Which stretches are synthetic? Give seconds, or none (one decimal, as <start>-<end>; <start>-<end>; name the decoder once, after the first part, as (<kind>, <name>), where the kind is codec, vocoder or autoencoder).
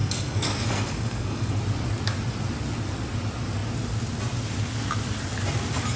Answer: 0.0-1.6 (codec, SNAC)